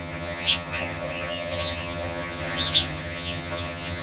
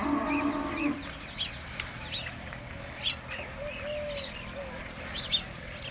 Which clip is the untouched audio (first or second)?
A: second